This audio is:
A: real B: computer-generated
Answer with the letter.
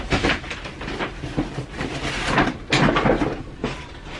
A